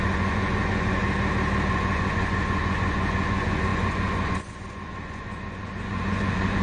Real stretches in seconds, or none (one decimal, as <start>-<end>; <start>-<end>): 1.0-1.7